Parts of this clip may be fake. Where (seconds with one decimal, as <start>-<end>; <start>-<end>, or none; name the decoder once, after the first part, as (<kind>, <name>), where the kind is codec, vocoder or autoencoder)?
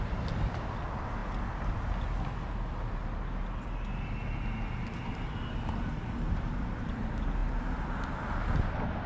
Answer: none